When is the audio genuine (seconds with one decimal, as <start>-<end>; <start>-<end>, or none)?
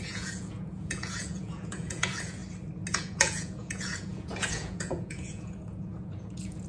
2.4-2.9